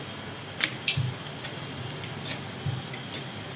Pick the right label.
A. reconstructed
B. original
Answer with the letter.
B